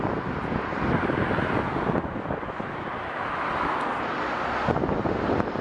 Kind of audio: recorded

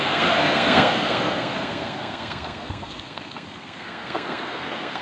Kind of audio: remade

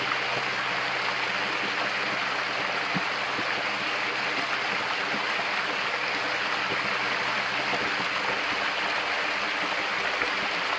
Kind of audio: recorded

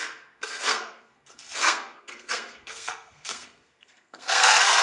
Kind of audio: remade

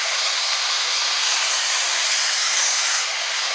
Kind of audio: remade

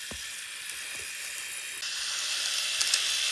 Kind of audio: recorded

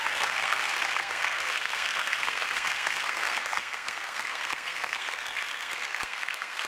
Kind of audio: remade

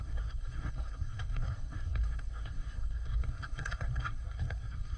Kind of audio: remade